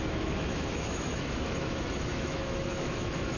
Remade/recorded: remade